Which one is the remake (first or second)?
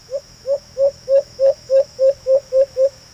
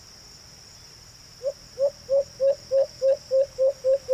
first